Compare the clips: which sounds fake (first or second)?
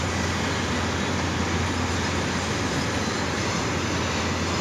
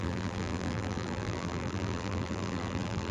second